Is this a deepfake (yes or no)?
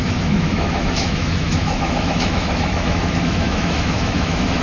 yes